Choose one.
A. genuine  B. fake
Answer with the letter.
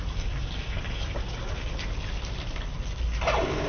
A